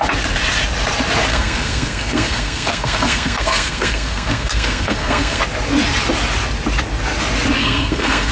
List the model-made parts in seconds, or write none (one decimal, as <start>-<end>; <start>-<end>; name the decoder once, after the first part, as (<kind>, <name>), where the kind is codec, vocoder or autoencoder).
1.3-5.4 (codec, SNAC); 7.6-8.3